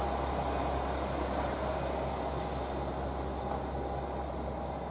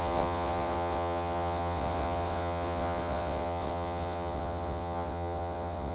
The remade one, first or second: second